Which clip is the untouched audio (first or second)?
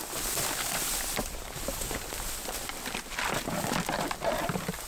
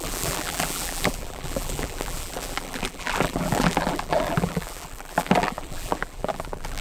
first